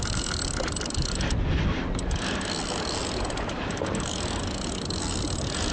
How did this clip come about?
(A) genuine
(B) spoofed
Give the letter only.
A